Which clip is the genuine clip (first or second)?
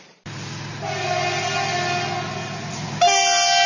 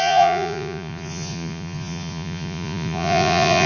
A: first